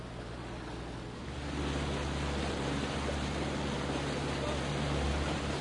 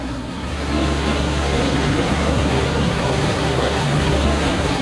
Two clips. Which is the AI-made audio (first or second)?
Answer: second